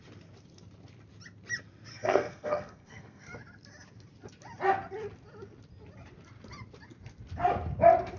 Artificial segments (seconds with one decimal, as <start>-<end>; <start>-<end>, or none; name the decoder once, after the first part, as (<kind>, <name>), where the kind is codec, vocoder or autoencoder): 1.9-3.3 (codec, SNAC)